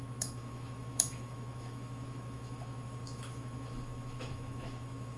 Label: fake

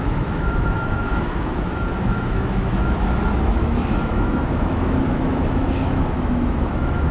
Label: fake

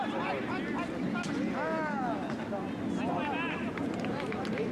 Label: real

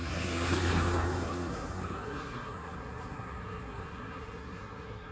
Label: fake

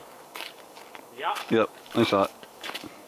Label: fake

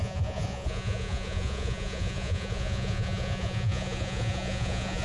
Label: fake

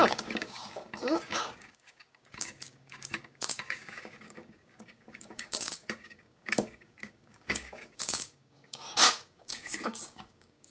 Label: fake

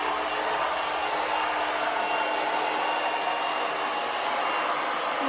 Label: real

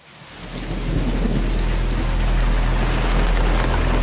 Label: real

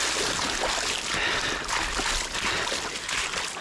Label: real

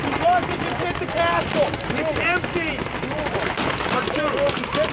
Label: real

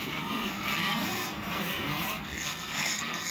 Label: fake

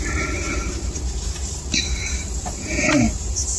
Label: fake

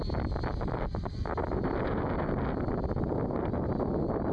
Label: real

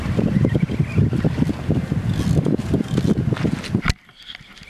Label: real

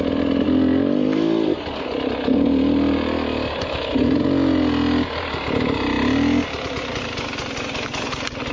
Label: real